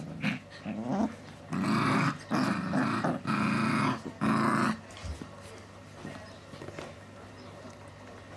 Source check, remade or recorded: recorded